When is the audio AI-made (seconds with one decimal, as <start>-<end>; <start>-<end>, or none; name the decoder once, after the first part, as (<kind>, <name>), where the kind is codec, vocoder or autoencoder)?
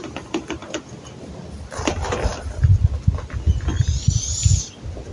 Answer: none